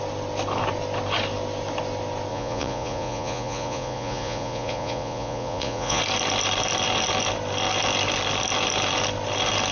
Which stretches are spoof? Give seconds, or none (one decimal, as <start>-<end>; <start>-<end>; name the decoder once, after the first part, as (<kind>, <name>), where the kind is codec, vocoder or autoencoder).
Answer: 2.3-6.0 (vocoder, Vocos)